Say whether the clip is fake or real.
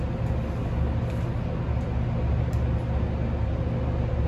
real